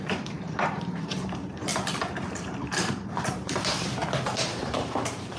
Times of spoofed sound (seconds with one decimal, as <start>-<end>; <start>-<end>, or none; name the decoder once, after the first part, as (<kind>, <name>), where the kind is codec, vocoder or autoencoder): 0.0-1.7 (vocoder, BigVGAN v2); 2.3-4.0; 4.6-5.4

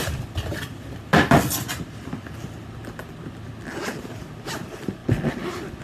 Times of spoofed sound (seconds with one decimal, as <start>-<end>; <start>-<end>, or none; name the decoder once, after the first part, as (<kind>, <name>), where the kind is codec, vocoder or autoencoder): 0.0-1.1 (vocoder, BigVGAN v2); 4.5-5.8

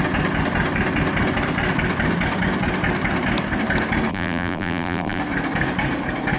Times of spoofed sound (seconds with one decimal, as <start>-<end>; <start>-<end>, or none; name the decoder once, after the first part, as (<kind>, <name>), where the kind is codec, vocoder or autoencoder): 4.1-5.2 (vocoder, BigVGAN v2)

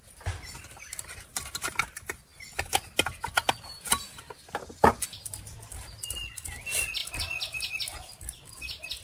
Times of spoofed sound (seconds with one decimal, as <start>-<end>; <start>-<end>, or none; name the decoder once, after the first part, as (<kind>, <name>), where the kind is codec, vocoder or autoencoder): none

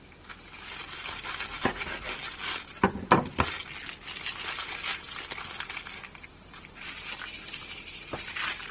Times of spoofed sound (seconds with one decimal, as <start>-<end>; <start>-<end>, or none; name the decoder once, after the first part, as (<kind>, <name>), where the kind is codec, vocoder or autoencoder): 0.8-3.6 (vocoder, BigVGAN v2)

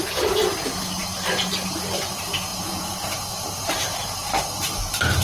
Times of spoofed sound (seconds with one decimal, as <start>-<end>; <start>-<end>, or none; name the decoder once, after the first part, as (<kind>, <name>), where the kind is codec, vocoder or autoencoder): 1.0-1.5 (vocoder, BigVGAN v2); 2.5-4.3

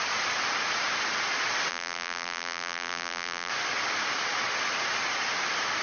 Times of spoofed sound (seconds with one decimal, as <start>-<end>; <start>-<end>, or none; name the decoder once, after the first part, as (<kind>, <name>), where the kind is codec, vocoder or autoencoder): 1.7-3.5 (vocoder, BigVGAN v2)

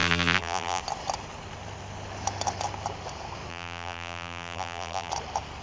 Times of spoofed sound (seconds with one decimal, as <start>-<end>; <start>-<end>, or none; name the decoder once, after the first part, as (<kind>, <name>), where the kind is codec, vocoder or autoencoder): 0.0-0.8 (vocoder, BigVGAN v2); 3.5-5.1